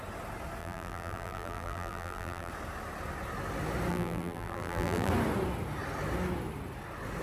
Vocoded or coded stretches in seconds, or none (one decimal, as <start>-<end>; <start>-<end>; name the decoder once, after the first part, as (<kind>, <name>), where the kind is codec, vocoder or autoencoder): 0.6-2.5 (vocoder, BigVGAN v2); 3.9-5.1